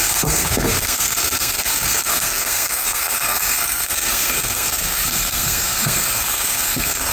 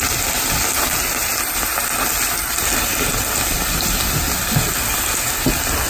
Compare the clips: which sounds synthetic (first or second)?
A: first